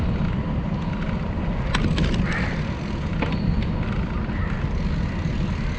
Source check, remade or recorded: recorded